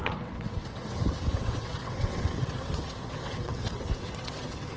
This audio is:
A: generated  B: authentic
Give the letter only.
A